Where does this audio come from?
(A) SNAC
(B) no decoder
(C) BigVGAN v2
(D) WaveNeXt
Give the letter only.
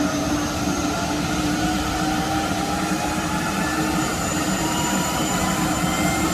C